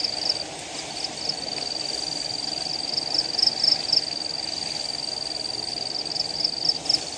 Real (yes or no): yes